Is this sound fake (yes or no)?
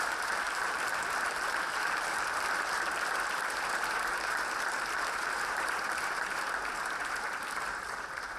yes